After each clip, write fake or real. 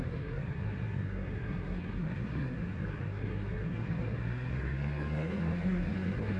fake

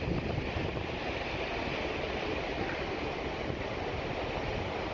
real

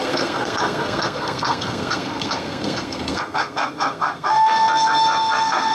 fake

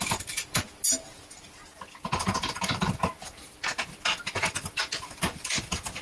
real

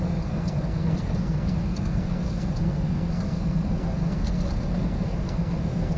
fake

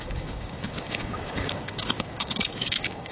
fake